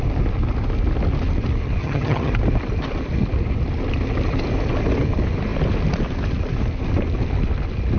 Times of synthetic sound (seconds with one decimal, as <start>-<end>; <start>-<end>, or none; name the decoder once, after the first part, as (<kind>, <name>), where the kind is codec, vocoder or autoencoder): 1.8-2.3 (vocoder, HiFi-GAN)